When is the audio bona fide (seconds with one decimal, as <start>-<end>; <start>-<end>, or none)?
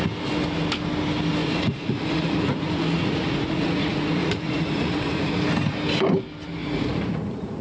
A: 0.0-1.4; 5.5-6.6